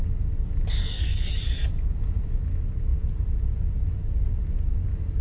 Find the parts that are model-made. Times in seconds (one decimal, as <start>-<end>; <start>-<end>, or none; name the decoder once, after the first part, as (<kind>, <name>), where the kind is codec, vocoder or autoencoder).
0.8-1.3 (codec, SNAC)